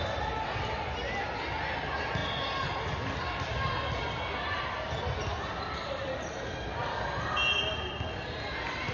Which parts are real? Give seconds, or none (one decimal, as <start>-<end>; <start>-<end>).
0.0-8.9